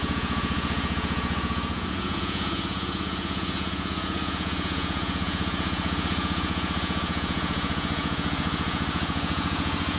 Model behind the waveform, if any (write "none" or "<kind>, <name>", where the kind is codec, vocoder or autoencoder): vocoder, Vocos